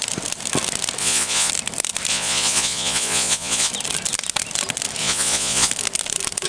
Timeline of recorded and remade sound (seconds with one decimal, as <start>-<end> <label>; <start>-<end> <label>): 0.0-1.0 recorded; 1.0-1.5 remade; 1.5-2.1 recorded; 2.1-3.7 remade; 3.7-5.0 recorded; 5.0-5.7 remade; 5.7-6.5 recorded

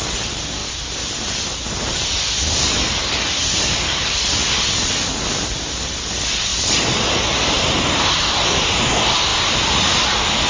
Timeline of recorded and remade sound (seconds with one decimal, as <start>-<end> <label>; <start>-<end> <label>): 0.0-10.5 recorded

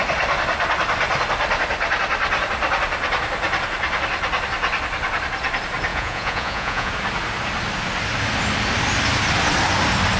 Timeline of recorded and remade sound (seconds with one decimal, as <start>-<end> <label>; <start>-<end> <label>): 0.0-5.9 recorded; 5.9-6.9 remade; 6.9-10.2 recorded

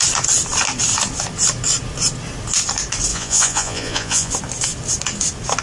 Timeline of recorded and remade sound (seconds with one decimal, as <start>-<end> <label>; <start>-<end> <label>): 0.0-3.1 recorded; 3.1-4.3 remade; 4.3-5.6 recorded

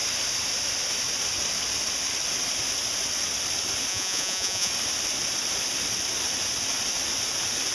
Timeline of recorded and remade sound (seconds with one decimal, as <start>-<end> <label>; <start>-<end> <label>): 0.0-3.9 recorded; 3.9-4.7 remade; 4.7-7.7 recorded